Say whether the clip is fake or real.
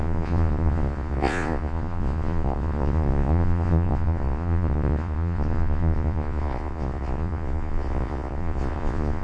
fake